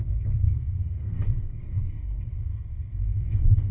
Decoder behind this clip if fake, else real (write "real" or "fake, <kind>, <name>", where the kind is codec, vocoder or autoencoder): fake, codec, SNAC